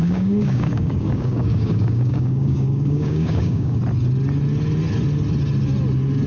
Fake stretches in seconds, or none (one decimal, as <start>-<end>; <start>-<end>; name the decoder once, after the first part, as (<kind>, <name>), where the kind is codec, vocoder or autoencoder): 0.0-3.8 (codec, DAC)